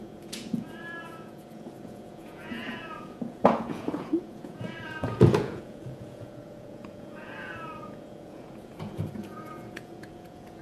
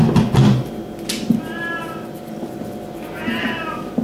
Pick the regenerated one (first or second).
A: first